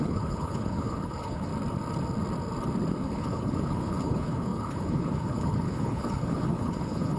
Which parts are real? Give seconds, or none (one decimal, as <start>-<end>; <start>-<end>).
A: 1.5-2.9